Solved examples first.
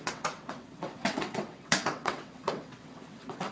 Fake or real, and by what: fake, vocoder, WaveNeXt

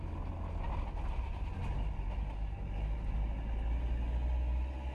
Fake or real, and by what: real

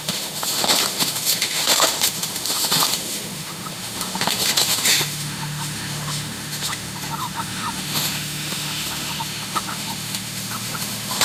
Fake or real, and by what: fake, autoencoder, DAC-VAE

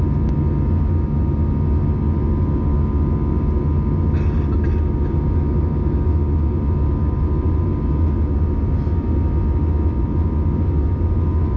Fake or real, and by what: real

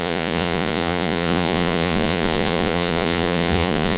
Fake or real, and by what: fake, vocoder, Vocos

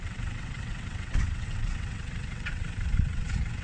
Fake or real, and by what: fake, vocoder, WaveNeXt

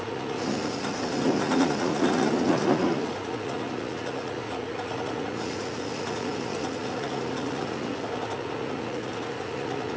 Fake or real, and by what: fake, vocoder, Vocos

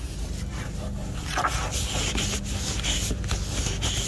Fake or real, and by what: real